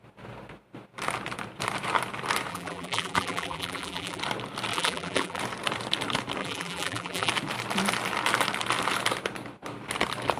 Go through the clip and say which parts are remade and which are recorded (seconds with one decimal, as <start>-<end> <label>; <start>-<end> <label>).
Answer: 0.0-2.5 recorded; 2.5-4.2 remade; 4.2-4.7 recorded; 4.7-5.4 remade; 5.4-6.4 recorded; 6.4-7.3 remade; 7.3-10.4 recorded